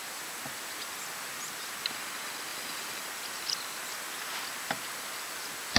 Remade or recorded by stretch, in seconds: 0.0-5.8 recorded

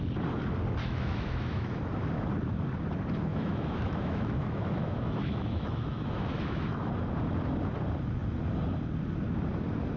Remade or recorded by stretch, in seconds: 0.0-0.8 recorded; 0.8-1.9 remade; 1.9-3.3 recorded; 3.3-6.9 remade; 6.9-10.0 recorded